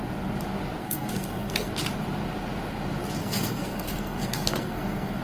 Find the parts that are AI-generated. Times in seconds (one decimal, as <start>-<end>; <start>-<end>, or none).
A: 0.8-1.7; 3.2-5.2